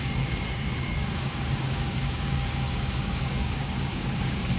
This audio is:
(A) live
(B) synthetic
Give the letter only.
B